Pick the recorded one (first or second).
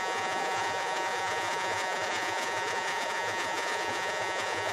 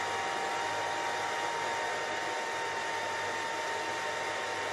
second